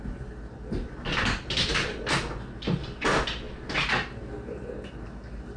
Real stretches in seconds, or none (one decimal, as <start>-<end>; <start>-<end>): 0.0-5.6